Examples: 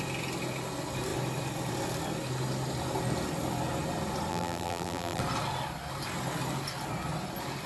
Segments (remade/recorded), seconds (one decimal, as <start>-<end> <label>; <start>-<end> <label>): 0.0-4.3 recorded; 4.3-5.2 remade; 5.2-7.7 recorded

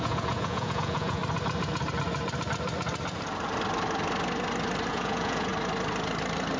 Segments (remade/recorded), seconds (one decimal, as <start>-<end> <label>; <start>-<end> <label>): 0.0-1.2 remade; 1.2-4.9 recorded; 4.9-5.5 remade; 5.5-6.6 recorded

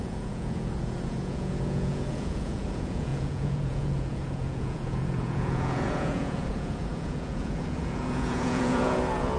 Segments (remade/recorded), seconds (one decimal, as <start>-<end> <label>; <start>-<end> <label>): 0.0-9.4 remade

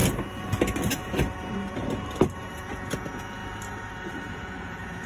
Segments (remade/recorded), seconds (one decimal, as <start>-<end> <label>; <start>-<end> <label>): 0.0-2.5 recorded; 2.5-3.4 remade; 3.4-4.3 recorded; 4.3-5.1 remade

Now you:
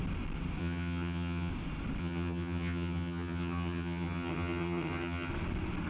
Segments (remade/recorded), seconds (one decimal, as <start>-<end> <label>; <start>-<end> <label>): 0.0-0.6 recorded; 0.6-1.5 remade; 1.5-2.0 recorded; 2.0-5.3 remade; 5.3-5.9 recorded

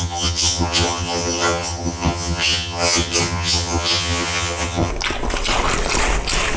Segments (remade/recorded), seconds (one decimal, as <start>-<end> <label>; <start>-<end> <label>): 0.0-4.9 remade; 4.9-6.6 recorded

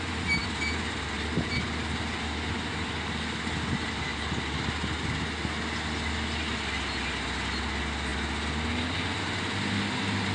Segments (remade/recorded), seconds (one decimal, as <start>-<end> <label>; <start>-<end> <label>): 0.0-10.3 recorded